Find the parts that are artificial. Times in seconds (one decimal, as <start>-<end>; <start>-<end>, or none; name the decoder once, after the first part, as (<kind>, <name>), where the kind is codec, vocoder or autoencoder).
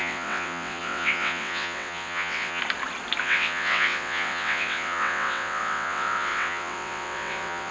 0.0-2.6 (vocoder, WaveNeXt); 3.2-7.7